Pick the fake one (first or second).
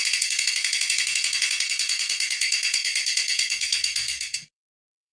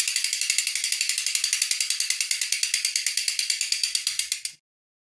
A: first